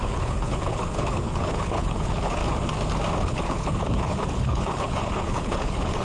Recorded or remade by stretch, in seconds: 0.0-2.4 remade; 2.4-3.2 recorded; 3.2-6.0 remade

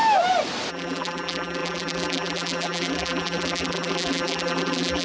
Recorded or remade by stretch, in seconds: 0.0-0.7 recorded; 0.7-5.0 remade

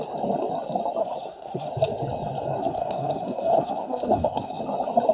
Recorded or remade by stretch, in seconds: 0.0-1.0 recorded; 1.0-1.7 remade; 1.7-2.6 recorded; 2.6-4.6 remade; 4.6-5.1 recorded

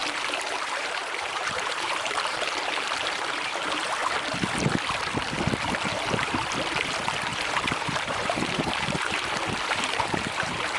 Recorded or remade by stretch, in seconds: 0.0-4.0 remade; 4.0-7.4 recorded; 7.4-10.8 remade

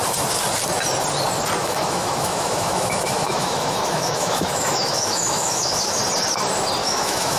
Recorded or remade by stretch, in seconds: 0.0-1.6 recorded; 1.6-6.0 remade; 6.0-6.8 recorded; 6.8-7.4 remade

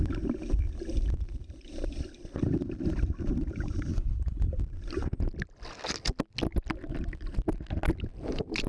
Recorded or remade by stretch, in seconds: 0.0-3.9 recorded; 3.9-4.6 remade; 4.6-8.7 recorded